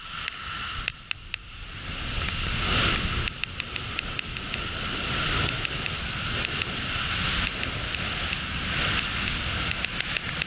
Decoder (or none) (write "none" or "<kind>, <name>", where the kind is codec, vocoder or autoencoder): none